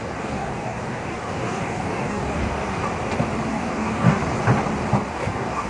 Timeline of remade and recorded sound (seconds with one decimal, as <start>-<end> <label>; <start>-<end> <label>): 0.0-2.8 remade; 2.8-3.5 recorded; 3.5-4.2 remade; 4.2-5.1 recorded; 5.1-5.7 remade